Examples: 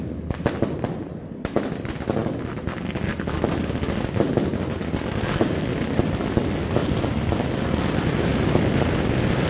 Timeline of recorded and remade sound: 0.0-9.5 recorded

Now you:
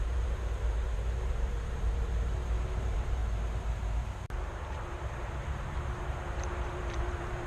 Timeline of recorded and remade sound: 0.0-3.2 remade; 3.2-4.5 recorded; 4.5-7.5 remade